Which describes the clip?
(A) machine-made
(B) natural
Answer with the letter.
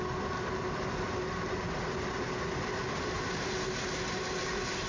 B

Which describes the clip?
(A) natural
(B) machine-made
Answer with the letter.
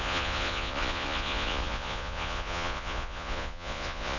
B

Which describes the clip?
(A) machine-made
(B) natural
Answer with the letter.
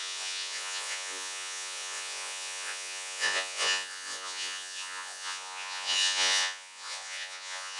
A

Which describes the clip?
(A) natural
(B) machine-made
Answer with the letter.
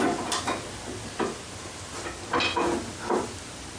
A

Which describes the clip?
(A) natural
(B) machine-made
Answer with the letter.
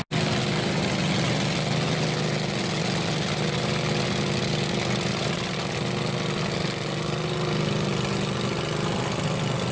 A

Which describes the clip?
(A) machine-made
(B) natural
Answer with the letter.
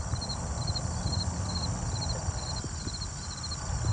B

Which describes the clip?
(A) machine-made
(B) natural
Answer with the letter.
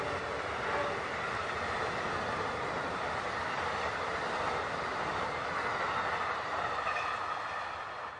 B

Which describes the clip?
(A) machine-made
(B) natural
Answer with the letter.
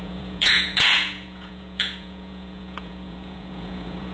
A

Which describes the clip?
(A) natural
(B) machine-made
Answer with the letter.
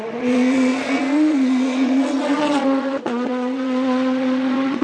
B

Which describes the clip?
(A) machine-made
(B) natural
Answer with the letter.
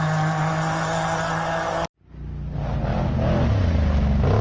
B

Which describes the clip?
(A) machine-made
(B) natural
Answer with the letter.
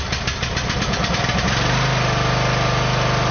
B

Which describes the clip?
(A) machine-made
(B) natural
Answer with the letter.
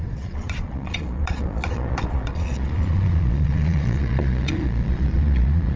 A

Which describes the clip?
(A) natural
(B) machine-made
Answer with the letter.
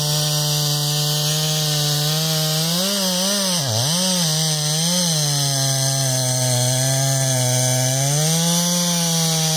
A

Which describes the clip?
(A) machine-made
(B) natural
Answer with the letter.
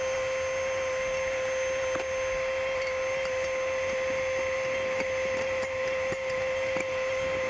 B